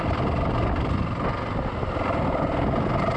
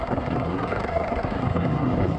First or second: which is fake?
second